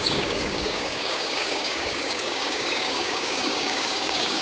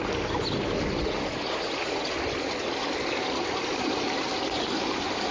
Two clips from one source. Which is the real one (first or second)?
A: second